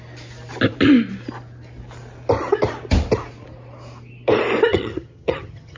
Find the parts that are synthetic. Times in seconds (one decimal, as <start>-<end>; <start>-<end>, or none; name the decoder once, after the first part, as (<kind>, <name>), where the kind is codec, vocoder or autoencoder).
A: 4.7-5.8 (vocoder, HiFi-GAN)